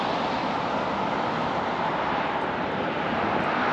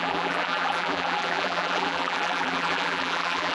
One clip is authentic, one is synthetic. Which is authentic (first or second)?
first